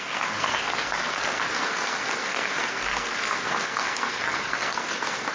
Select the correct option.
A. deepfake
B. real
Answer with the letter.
A